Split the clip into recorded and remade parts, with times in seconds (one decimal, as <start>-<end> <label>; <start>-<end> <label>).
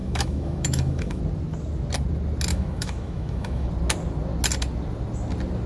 0.0-1.2 remade; 1.2-2.5 recorded; 2.5-3.7 remade; 3.7-5.7 recorded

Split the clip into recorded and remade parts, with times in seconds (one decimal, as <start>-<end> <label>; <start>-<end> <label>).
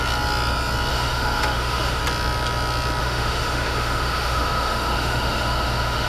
0.0-0.9 recorded; 0.9-2.0 remade; 2.0-3.0 recorded; 3.0-6.1 remade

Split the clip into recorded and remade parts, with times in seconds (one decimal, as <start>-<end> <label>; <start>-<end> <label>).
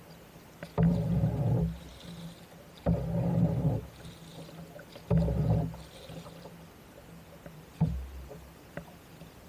0.0-9.5 recorded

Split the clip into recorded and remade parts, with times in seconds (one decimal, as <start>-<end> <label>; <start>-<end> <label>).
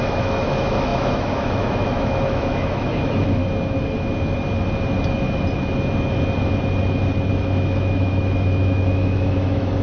0.0-3.4 remade; 3.4-7.3 recorded; 7.3-9.8 remade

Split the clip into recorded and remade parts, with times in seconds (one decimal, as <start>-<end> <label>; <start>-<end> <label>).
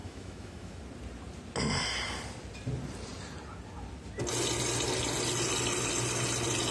0.0-0.8 remade; 0.8-6.7 recorded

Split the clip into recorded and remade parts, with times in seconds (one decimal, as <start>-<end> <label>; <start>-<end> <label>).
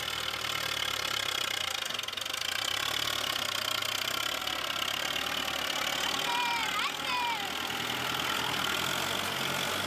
0.0-9.9 recorded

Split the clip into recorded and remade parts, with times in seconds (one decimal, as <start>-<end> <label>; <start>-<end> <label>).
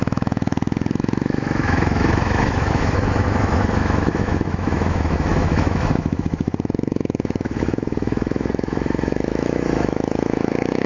0.0-10.9 remade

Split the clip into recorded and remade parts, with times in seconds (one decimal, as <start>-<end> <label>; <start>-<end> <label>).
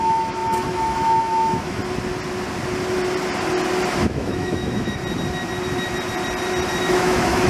0.0-1.8 remade; 1.8-4.0 recorded; 4.0-5.0 remade; 5.0-6.8 recorded; 6.8-7.5 remade